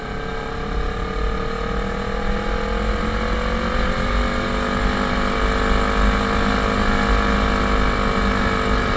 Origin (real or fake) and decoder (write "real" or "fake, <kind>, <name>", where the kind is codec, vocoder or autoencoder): real